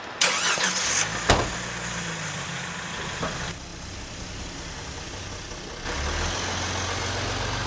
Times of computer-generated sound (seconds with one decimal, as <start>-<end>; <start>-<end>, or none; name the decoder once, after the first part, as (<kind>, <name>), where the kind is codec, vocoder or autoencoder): none